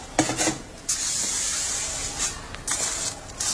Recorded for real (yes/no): yes